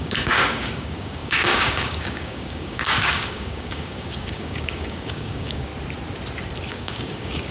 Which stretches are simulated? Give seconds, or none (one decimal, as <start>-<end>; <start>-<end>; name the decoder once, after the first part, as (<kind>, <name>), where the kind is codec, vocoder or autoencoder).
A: 0.0-5.7 (codec, DAC); 6.7-7.5